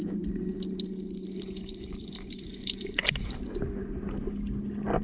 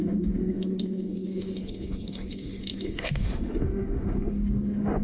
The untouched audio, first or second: first